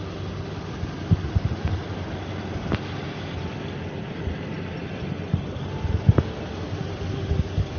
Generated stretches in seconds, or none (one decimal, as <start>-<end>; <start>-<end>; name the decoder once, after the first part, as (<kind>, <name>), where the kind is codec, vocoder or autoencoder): none